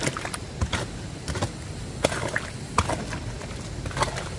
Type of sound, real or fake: real